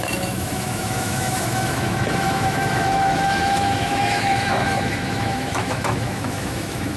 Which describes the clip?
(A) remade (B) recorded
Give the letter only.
A